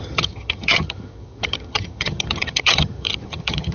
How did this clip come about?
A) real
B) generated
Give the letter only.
B